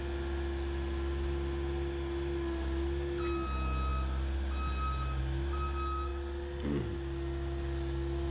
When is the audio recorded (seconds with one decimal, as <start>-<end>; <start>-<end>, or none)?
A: 0.0-8.3